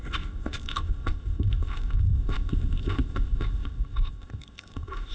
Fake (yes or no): yes